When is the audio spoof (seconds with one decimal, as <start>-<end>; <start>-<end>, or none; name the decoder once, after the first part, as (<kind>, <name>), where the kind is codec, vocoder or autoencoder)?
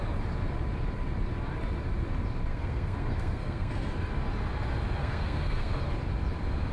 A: 2.5-3.9 (codec, SNAC); 5.0-5.7